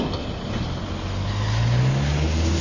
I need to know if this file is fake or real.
real